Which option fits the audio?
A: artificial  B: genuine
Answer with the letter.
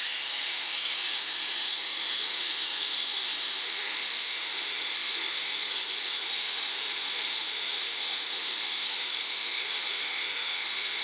A